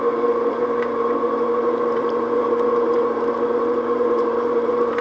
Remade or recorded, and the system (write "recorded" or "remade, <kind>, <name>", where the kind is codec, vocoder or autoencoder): remade, vocoder, BigVGAN v2